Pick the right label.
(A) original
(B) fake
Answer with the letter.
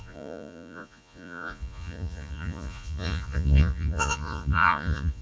B